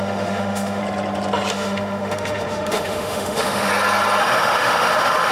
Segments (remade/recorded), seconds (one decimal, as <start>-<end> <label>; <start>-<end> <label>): 0.0-0.8 remade; 0.8-1.5 recorded; 1.5-3.7 remade; 3.7-4.2 recorded; 4.2-5.3 remade